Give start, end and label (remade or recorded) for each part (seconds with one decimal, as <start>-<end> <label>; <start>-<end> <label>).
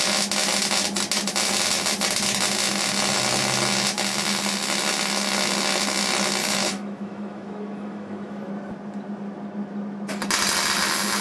0.0-6.4 recorded; 6.4-8.5 remade; 8.5-11.2 recorded